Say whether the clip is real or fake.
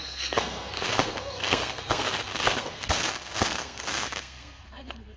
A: fake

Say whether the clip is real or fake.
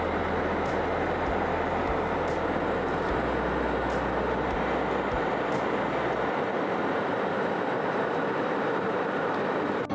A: real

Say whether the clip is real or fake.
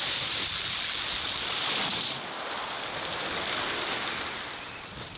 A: real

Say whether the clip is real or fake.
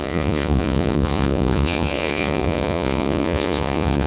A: fake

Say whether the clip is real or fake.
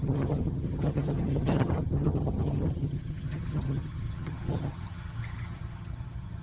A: fake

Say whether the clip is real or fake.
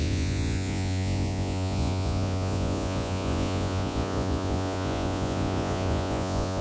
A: fake